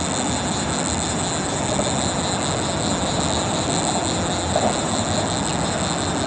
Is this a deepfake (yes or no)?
no